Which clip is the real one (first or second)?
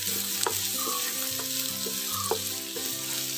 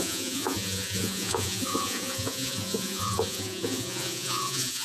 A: first